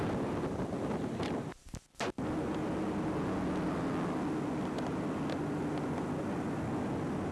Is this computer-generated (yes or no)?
no